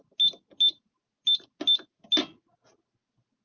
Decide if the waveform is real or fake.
real